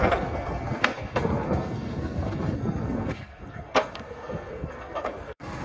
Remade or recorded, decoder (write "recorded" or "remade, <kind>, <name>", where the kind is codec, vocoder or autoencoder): remade, codec, SNAC